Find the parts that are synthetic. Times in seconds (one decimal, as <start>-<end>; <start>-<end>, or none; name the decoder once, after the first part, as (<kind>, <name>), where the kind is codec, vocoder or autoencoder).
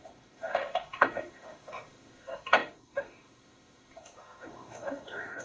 0.0-5.4 (autoencoder, DAC-VAE)